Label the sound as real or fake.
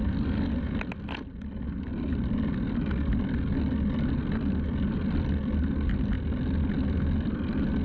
real